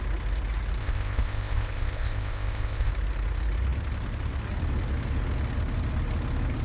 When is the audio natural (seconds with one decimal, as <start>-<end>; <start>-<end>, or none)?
0.0-0.8; 2.9-6.6